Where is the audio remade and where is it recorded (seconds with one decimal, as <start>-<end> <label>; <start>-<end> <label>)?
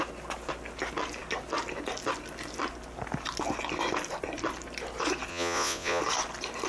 0.0-5.3 recorded; 5.3-6.0 remade; 6.0-6.7 recorded